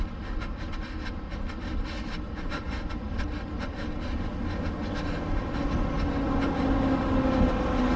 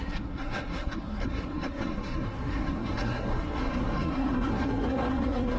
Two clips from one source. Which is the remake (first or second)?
second